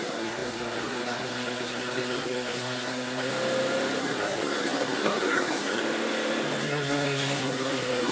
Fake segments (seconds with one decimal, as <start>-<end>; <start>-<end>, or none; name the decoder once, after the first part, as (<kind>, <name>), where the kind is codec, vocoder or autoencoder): 0.0-3.3 (codec, SNAC); 4.0-5.8; 6.6-8.1